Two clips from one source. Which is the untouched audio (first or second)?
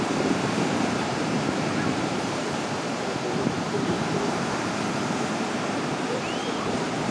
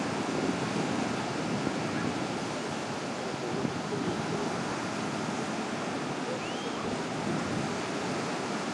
second